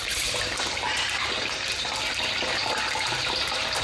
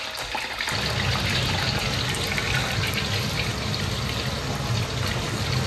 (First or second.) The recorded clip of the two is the second